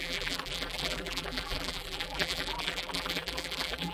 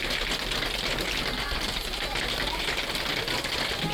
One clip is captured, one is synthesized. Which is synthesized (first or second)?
first